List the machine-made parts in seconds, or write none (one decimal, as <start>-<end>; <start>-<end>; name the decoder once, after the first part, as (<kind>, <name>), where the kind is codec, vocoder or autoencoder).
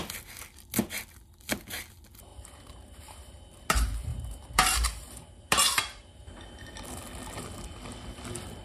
2.3-3.5 (vocoder, BigVGAN v2); 4.1-6.7